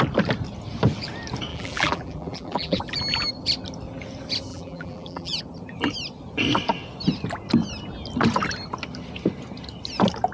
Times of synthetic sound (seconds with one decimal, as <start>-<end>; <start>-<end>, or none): 1.5-2.8; 4.5-5.4